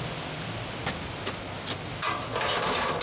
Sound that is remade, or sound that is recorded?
recorded